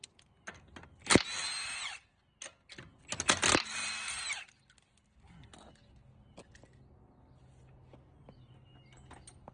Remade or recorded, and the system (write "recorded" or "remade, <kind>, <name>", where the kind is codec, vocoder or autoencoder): recorded